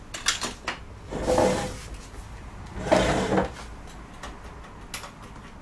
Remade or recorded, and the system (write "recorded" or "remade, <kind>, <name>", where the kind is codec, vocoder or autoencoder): recorded